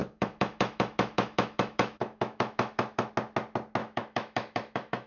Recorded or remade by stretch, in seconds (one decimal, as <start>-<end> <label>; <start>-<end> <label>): 0.0-3.1 remade; 3.1-3.8 recorded; 3.8-5.1 remade